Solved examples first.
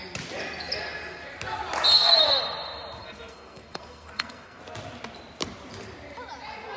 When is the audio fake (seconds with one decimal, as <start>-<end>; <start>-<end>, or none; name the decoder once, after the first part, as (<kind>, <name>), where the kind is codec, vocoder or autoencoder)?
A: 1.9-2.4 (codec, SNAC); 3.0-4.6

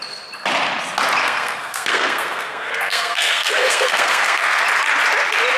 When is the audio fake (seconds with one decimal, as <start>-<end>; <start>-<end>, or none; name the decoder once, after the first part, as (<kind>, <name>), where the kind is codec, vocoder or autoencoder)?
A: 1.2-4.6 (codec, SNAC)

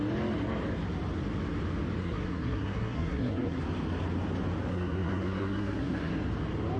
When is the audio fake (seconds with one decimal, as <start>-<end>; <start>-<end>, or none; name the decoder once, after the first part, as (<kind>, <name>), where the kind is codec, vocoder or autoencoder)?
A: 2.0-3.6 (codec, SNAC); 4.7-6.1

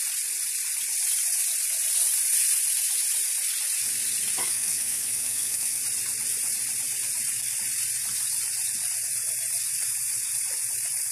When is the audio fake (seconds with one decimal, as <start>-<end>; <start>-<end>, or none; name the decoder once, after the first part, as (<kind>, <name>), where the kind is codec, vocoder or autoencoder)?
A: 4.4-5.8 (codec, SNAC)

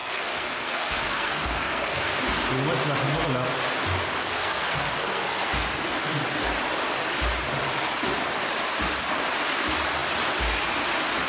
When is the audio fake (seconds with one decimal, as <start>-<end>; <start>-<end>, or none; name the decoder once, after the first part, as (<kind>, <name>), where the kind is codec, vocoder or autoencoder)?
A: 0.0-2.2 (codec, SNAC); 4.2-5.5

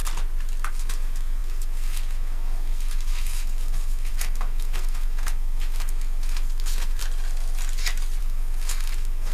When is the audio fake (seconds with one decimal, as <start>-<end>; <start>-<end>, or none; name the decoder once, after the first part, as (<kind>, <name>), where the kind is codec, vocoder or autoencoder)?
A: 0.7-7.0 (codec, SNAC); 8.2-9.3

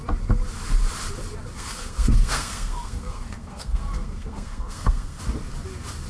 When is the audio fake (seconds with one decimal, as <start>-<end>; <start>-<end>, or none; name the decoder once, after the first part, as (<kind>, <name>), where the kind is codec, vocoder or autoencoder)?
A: 1.5-5.2 (codec, SNAC)